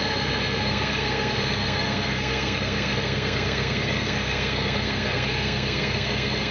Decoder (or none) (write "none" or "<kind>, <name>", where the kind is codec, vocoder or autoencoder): codec, SNAC